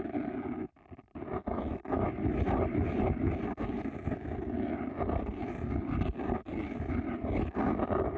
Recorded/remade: recorded